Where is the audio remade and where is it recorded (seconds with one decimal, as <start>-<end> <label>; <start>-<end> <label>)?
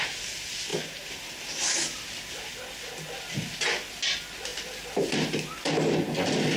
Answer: 0.0-6.6 recorded